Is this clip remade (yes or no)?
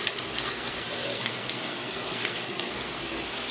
yes